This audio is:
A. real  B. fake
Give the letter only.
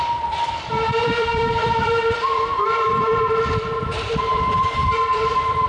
B